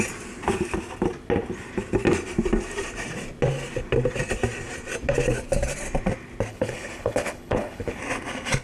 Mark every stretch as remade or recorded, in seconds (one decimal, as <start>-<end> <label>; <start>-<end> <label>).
0.0-6.5 recorded; 6.5-8.0 remade; 8.0-8.6 recorded

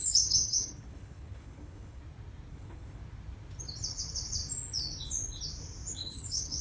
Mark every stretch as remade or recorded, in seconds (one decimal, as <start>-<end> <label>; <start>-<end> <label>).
0.0-2.0 remade; 2.0-2.5 recorded; 2.5-3.0 remade; 3.0-3.9 recorded; 3.9-4.4 remade; 4.4-5.9 recorded; 5.9-6.6 remade

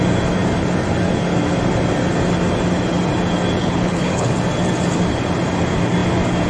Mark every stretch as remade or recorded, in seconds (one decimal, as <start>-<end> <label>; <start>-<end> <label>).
0.0-3.6 recorded; 3.6-4.3 remade; 4.3-6.5 recorded

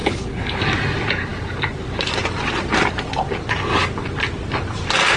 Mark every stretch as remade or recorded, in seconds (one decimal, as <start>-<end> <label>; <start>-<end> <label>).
0.0-0.6 remade; 0.6-5.2 recorded

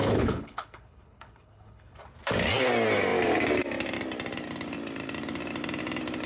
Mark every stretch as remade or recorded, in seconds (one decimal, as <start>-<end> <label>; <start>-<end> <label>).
0.0-2.0 remade; 2.0-6.3 recorded

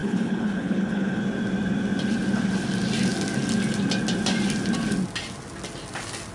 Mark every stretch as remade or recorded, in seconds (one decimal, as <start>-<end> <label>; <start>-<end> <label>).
0.0-1.2 remade; 1.2-6.3 recorded